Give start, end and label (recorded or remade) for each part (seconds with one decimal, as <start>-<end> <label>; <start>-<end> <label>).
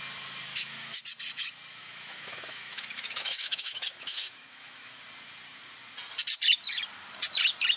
0.0-0.5 recorded; 0.5-1.0 remade; 1.0-1.8 recorded; 1.8-5.0 remade; 5.0-7.8 recorded